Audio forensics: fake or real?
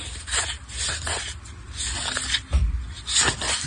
real